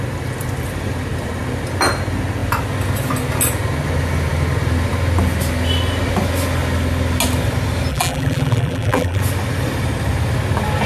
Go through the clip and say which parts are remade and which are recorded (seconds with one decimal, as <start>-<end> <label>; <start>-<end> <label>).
0.0-7.9 recorded; 7.9-9.2 remade; 9.2-10.9 recorded